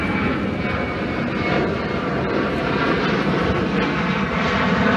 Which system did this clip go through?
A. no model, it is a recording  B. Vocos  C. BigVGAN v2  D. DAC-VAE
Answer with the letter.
A